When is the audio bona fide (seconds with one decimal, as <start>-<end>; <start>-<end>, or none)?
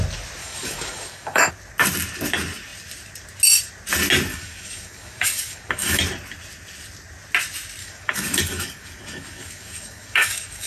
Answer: 0.0-0.4; 1.5-4.3; 6.0-7.8